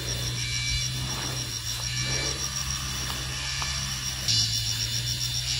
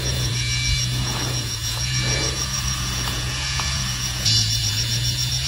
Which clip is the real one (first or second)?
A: first